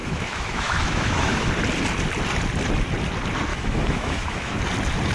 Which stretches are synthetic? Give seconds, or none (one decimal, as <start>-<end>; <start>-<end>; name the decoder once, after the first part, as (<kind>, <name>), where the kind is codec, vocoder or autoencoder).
0.0-1.5 (autoencoder, DAC-VAE); 3.5-4.6